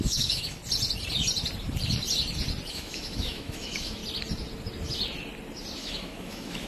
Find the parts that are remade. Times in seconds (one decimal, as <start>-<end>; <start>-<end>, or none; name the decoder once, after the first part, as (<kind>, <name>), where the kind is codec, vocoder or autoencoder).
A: 0.0-0.6 (autoencoder, DAC-VAE); 2.7-4.0; 5.8-6.7